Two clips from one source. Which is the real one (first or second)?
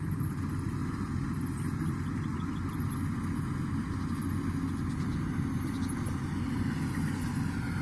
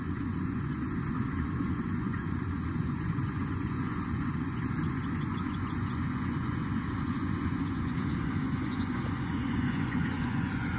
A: first